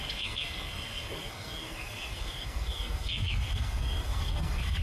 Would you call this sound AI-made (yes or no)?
yes